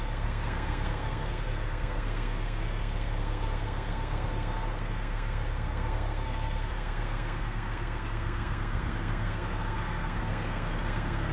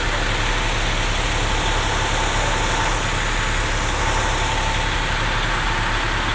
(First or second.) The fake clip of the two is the first